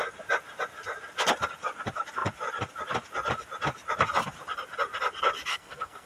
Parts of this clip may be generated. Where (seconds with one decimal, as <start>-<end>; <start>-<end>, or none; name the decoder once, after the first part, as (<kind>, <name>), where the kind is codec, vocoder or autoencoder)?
5.5-6.1 (codec, SNAC)